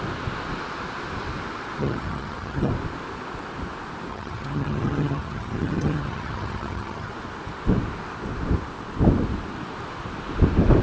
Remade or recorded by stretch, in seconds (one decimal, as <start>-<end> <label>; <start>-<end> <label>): 0.0-1.8 recorded; 1.8-2.7 remade; 2.7-4.1 recorded; 4.1-7.1 remade; 7.1-10.8 recorded